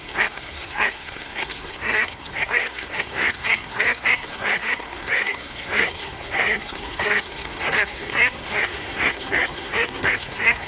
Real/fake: fake